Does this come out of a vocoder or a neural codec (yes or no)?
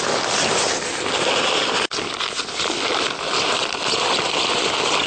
no